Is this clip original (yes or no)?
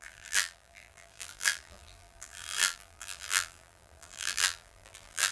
no